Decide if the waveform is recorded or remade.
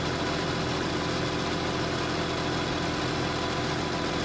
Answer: recorded